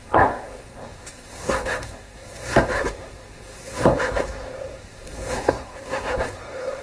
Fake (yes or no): yes